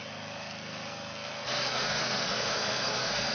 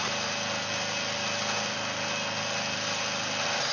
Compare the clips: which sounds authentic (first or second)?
second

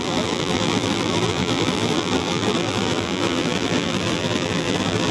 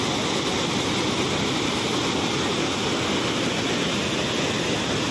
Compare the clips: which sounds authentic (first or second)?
second